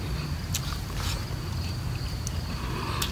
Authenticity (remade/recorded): recorded